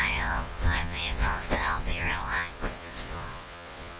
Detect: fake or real fake